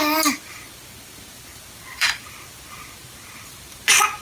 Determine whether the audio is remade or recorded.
remade